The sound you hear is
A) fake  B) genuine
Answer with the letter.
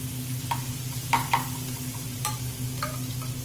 B